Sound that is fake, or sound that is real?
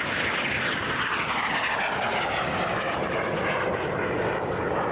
real